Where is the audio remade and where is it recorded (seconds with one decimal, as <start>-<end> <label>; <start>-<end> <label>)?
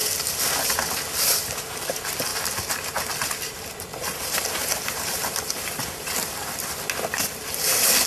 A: 0.0-2.3 recorded; 2.3-6.8 remade; 6.8-8.1 recorded